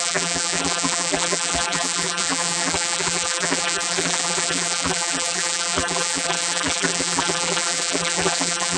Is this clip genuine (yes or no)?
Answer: no